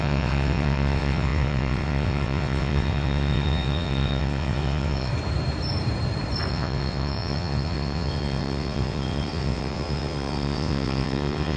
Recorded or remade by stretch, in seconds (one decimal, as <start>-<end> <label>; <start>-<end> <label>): 0.0-5.1 remade; 5.1-6.5 recorded; 6.5-11.6 remade